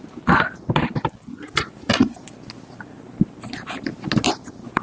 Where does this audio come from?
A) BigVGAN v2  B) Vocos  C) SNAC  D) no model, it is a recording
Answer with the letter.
D